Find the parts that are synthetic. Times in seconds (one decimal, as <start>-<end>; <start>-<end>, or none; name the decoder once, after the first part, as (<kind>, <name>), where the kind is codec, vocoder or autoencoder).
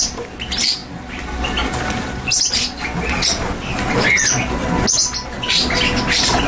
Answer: none